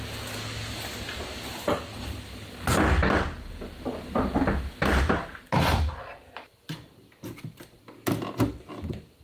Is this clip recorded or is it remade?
recorded